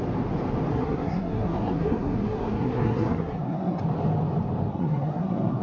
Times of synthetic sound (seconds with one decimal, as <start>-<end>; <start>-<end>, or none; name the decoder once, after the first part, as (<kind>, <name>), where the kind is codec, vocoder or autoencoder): 0.7-3.8 (codec, SNAC); 4.7-5.6